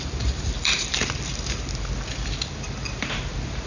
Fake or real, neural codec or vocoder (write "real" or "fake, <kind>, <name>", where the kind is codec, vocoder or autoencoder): real